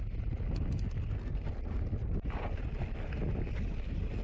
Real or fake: real